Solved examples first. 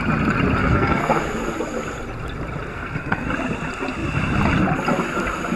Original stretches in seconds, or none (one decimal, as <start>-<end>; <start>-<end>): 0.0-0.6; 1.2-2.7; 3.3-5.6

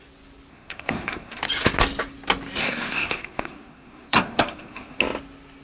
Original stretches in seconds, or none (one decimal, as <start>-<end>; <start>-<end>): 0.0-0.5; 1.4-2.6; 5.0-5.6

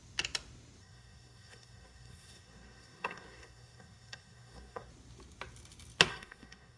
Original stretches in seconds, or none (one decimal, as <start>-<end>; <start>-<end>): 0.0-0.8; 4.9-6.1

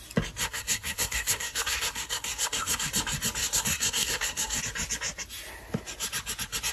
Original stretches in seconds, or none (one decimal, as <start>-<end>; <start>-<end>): 0.0-0.4; 2.9-3.4; 4.6-6.7

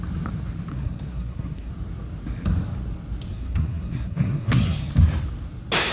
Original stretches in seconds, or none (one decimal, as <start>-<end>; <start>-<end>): 0.0-0.7; 1.7-3.3; 4.9-5.9

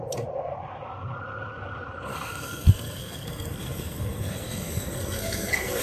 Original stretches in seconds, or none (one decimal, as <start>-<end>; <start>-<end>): 0.0-2.1

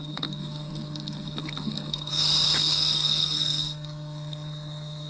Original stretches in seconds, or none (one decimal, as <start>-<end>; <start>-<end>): 2.1-2.6

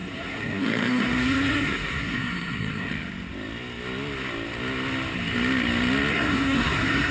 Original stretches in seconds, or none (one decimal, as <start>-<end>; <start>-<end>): 2.9-6.1